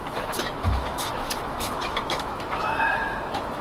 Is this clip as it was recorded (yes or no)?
no